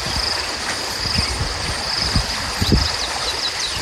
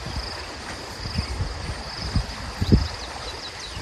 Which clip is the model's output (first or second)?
first